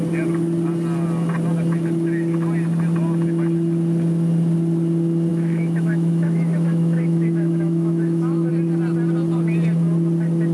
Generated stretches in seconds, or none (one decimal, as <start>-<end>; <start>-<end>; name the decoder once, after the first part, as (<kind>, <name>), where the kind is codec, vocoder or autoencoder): 5.3-8.5 (autoencoder, DAC-VAE)